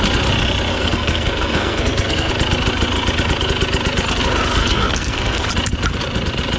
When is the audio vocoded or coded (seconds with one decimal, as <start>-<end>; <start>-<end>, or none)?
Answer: 0.7-2.3; 4.6-5.5

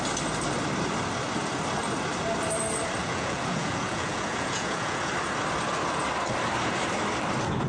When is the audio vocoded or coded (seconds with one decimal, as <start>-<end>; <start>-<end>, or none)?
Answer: 3.0-5.1